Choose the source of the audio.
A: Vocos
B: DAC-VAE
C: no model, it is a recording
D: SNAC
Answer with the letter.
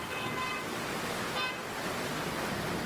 C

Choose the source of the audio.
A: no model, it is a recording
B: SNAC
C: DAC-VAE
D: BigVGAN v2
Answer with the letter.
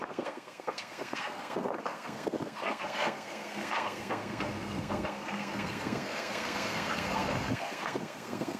B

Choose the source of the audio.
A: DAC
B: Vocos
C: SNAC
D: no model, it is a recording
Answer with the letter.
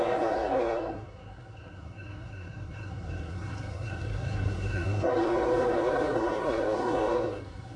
C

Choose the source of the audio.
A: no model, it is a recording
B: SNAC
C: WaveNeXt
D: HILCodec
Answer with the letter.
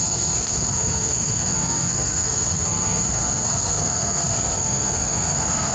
B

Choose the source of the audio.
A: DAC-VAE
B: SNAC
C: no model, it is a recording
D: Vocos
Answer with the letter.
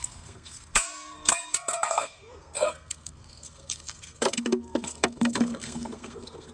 B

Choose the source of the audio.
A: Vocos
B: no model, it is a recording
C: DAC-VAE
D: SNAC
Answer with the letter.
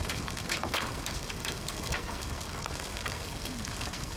D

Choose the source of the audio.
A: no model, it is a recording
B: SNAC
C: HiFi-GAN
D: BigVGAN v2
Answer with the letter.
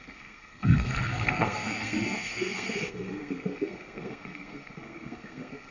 B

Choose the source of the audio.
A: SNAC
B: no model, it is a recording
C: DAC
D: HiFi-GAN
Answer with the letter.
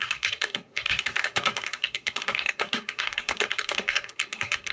A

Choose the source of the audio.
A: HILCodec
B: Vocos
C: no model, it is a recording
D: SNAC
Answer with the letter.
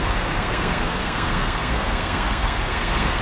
D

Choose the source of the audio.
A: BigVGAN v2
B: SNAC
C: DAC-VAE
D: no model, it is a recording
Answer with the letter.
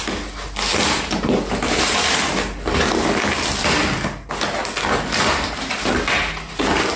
D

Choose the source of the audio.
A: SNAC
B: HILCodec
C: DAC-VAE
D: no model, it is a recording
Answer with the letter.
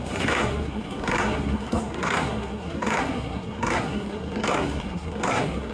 A